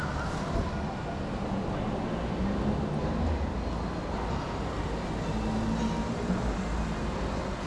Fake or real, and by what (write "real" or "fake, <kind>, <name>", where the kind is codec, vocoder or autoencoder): real